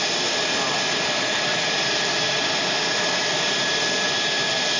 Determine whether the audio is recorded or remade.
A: recorded